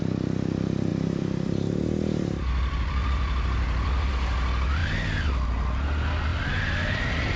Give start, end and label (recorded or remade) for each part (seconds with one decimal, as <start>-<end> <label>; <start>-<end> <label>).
0.0-0.9 recorded; 0.9-4.1 remade; 4.1-4.8 recorded; 4.8-5.3 remade; 5.3-6.3 recorded; 6.3-7.4 remade